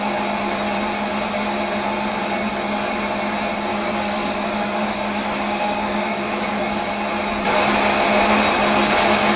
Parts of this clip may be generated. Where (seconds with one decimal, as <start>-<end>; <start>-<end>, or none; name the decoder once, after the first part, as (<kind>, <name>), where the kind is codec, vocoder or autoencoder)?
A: 3.7-6.9 (codec, DAC)